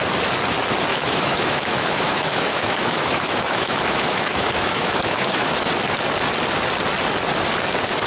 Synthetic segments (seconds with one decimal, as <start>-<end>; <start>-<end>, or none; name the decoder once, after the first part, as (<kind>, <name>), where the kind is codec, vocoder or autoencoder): 0.9-5.7 (autoencoder, DAC-VAE)

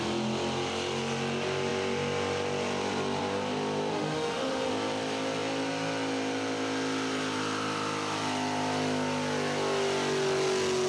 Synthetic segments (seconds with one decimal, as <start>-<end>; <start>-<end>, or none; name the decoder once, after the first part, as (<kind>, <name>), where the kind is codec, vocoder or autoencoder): 3.9-4.7 (autoencoder, DAC-VAE)

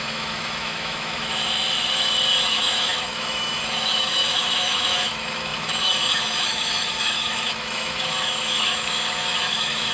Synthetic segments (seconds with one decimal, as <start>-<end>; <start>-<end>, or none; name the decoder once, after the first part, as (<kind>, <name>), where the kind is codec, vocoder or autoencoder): 0.0-1.4 (autoencoder, DAC-VAE); 2.5-9.9

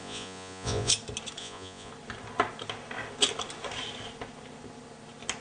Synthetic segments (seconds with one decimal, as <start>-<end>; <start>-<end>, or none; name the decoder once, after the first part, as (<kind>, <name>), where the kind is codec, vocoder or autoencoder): 0.0-0.9 (vocoder, Vocos); 1.4-1.9

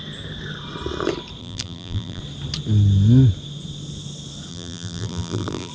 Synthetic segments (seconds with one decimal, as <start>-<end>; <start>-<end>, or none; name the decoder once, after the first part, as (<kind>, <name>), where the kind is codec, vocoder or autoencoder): 1.4-2.2 (vocoder, BigVGAN v2); 4.5-5.7